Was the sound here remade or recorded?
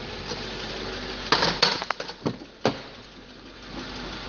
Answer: recorded